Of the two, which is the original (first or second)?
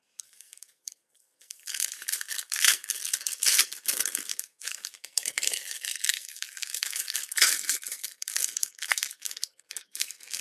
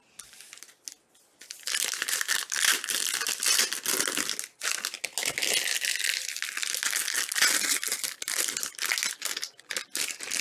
second